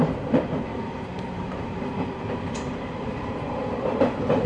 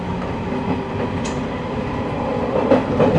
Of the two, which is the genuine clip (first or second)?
second